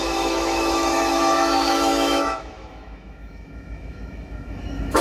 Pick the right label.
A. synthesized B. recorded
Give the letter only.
A